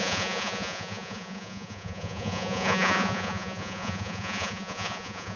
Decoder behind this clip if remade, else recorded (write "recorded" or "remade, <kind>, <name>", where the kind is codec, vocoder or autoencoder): remade, vocoder, Vocos